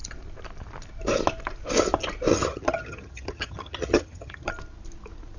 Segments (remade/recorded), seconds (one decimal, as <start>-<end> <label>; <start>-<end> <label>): 0.0-2.3 recorded; 2.3-4.5 remade; 4.5-5.4 recorded

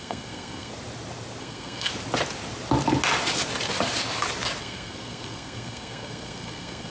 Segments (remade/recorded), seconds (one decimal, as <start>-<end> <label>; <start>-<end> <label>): 0.0-0.7 remade; 0.7-1.4 recorded; 1.4-1.9 remade; 1.9-4.6 recorded; 4.6-6.9 remade

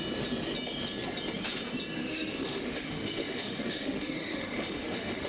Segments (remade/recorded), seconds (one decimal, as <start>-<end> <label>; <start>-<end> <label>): 0.0-2.0 recorded; 2.0-5.3 remade

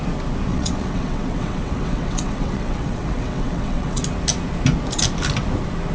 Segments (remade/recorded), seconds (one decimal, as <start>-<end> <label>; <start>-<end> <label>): 0.0-0.5 recorded; 0.5-4.0 remade; 4.0-5.9 recorded

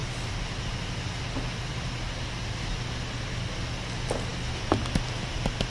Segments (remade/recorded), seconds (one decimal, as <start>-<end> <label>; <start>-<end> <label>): 0.0-5.7 recorded